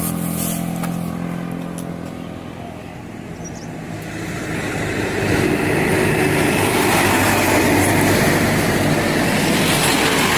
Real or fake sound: real